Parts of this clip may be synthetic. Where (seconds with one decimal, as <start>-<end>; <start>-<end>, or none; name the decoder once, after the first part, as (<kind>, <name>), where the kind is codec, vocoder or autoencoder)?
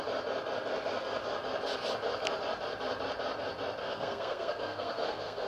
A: 3.8-5.5 (codec, SNAC)